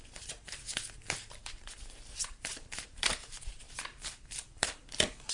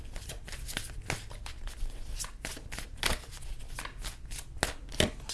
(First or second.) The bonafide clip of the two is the second